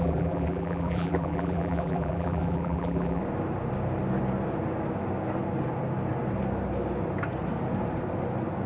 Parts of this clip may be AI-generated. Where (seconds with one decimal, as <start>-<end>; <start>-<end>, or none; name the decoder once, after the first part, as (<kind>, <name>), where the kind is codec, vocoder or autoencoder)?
0.0-3.2 (vocoder, BigVGAN v2)